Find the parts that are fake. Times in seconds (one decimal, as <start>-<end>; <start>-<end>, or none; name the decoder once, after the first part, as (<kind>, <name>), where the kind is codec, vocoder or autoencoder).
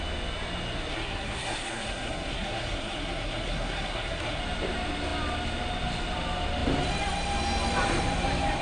0.9-4.4 (codec, SNAC)